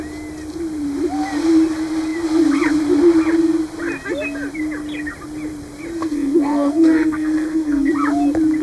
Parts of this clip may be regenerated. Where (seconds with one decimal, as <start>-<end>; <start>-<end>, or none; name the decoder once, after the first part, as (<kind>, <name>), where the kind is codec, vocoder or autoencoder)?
6.0-7.9 (codec, SNAC)